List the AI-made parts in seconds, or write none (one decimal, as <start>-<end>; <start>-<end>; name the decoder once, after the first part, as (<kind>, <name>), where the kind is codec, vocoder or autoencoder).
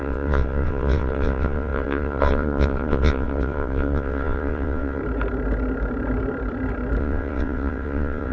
0.0-5.0 (vocoder, WaveNeXt); 7.0-8.3